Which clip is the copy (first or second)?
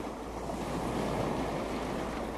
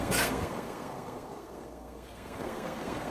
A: second